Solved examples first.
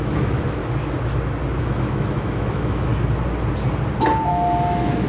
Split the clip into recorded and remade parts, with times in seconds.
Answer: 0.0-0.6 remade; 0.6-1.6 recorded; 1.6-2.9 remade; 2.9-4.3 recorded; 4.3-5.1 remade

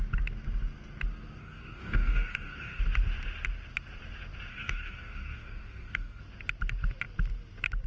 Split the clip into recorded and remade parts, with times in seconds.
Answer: 0.0-1.4 recorded; 1.4-2.8 remade; 2.8-4.5 recorded; 4.5-6.2 remade; 6.2-7.9 recorded

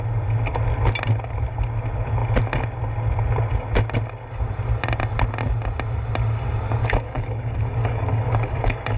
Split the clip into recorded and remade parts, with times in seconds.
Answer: 0.0-6.8 recorded; 6.8-9.0 remade

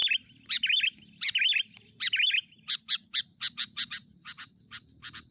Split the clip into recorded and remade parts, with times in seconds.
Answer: 0.0-5.3 recorded